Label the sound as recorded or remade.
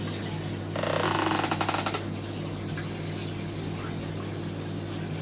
recorded